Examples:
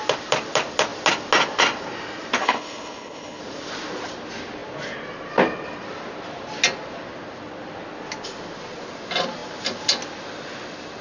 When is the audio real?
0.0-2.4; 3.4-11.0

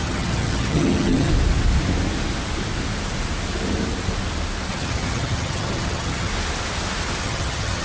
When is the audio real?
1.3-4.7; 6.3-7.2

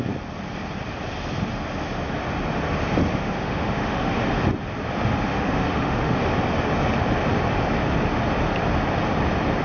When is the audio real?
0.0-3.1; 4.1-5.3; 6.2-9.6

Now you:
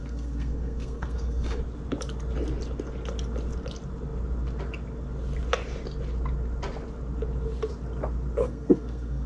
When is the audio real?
1.6-8.4